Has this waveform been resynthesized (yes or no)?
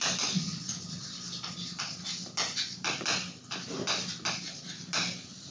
no